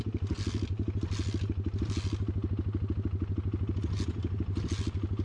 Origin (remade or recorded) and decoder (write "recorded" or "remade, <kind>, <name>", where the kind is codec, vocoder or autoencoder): recorded